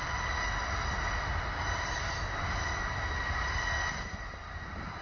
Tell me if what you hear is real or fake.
real